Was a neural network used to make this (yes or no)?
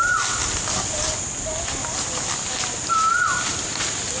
no